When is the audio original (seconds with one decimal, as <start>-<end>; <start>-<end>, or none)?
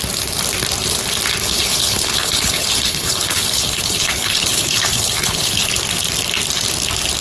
0.0-1.4; 5.7-7.2